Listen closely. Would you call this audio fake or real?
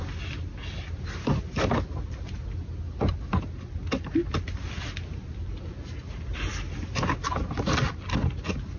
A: real